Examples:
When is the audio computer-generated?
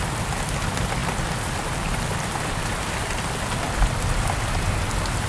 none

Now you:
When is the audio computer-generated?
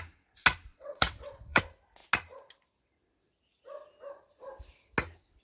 0.7-1.6 (vocoder, WaveNeXt)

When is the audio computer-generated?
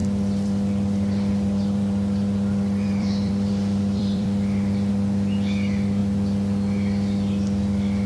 0.0-4.9 (vocoder, BigVGAN v2)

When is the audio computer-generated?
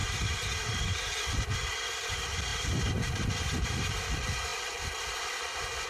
0.0-1.1 (vocoder, BigVGAN v2); 2.5-4.0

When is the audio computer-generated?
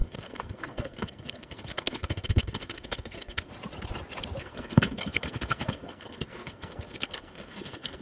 0.0-3.5 (codec, SNAC); 4.4-8.0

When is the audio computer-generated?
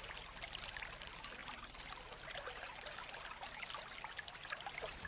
none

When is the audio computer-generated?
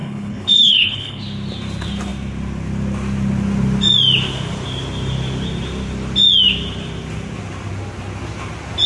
0.0-1.2 (codec, HILCodec)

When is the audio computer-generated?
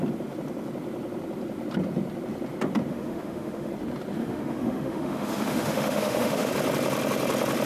2.9-3.7 (autoencoder, DAC-VAE); 4.2-6.5